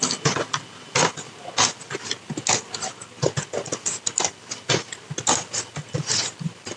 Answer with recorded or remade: recorded